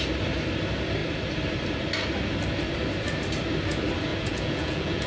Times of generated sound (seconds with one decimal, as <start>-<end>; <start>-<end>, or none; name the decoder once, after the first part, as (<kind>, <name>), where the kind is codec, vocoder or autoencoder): 4.1-5.1 (vocoder, Vocos)